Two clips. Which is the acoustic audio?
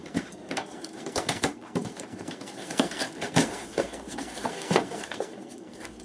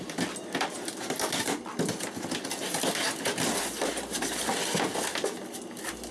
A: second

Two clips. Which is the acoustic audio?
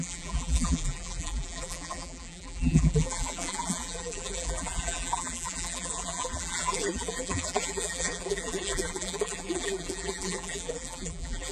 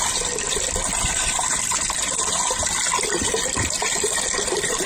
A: second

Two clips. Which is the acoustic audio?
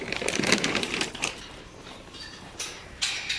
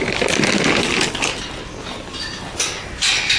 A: second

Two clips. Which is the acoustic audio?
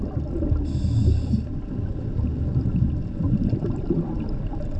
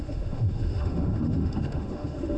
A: first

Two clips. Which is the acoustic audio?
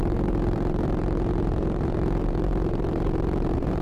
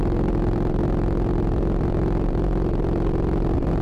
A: second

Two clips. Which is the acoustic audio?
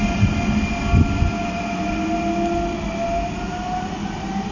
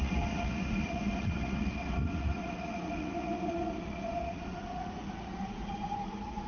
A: first